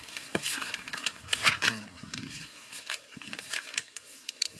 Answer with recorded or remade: remade